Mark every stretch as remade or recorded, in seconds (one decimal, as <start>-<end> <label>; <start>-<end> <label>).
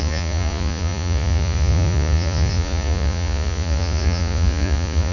0.0-5.1 remade